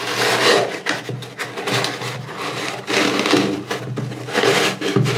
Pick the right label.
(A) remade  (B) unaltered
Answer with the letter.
B